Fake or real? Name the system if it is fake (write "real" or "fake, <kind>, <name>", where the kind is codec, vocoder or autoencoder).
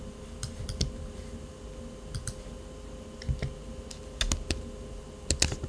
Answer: real